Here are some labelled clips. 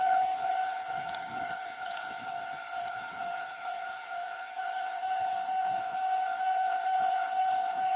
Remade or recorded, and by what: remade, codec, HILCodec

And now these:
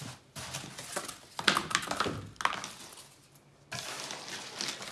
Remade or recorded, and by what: recorded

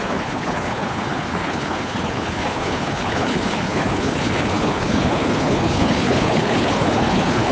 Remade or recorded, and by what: remade, codec, HILCodec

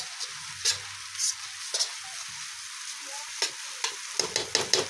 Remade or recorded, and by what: recorded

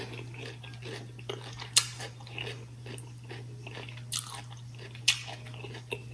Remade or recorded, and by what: recorded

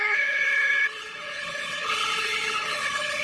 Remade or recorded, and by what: remade, codec, HILCodec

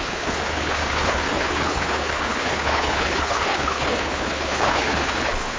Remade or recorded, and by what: remade, codec, HILCodec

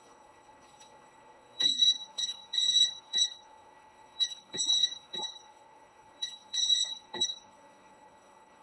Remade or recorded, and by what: remade, codec, HILCodec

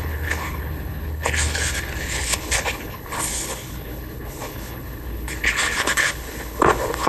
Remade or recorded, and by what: remade, codec, HILCodec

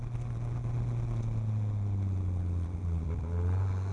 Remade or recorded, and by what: recorded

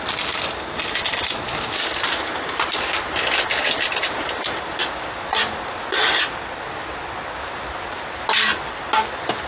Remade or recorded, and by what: recorded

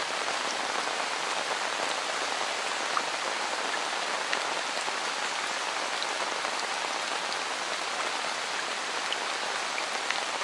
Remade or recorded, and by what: recorded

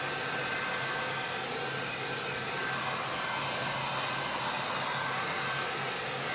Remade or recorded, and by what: recorded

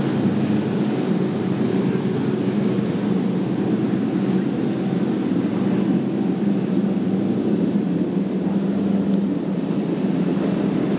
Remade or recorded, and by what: recorded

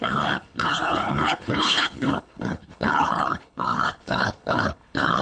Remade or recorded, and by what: remade, codec, HILCodec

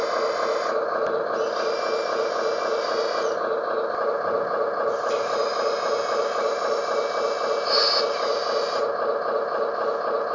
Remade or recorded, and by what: recorded